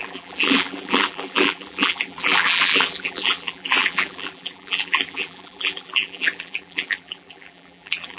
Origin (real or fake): fake